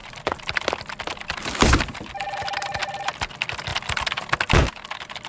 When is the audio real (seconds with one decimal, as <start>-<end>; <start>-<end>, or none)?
0.0-5.3